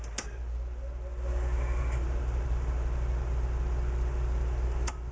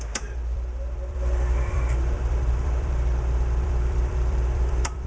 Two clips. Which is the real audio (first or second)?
first